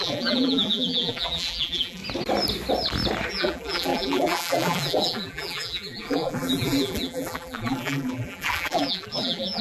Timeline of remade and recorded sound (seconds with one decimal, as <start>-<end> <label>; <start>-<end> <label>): 0.0-2.0 remade; 2.0-3.3 recorded; 3.3-9.6 remade